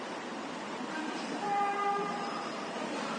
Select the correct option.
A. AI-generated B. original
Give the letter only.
A